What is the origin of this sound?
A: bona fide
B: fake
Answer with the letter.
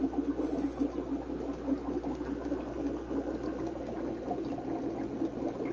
A